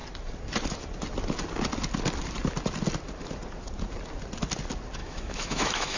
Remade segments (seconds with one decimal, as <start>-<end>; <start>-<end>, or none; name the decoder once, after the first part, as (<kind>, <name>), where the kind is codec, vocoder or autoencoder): 5.0-6.0 (autoencoder, DAC-VAE)